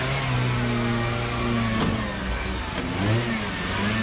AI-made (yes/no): no